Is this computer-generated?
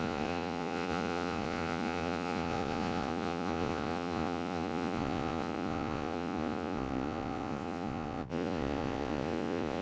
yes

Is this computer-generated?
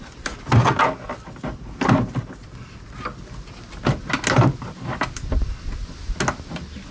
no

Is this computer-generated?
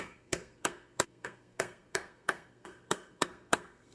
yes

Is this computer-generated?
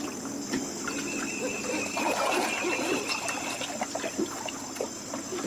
no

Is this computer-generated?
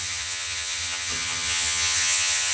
yes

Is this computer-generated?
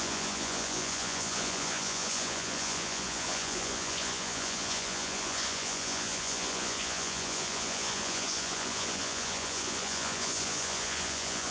yes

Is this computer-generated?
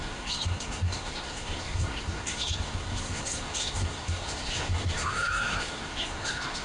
yes